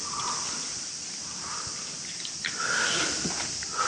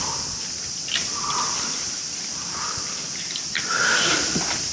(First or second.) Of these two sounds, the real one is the first